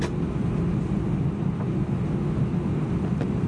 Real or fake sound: real